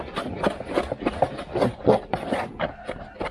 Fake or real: real